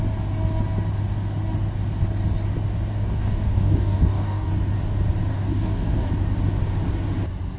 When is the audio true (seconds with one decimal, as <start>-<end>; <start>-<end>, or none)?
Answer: 0.0-2.9; 4.5-5.3; 6.1-7.6